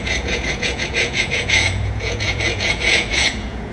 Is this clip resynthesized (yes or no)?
yes